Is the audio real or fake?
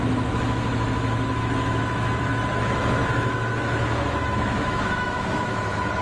fake